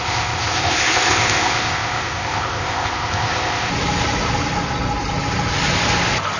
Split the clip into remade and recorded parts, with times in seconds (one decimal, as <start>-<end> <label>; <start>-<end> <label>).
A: 0.0-3.7 remade; 3.7-6.4 recorded